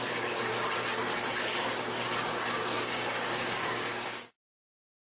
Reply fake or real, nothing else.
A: fake